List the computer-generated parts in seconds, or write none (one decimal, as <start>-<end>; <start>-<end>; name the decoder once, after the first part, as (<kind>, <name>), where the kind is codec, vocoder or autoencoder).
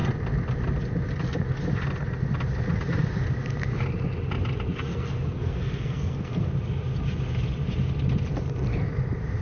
4.9-6.5 (codec, SNAC)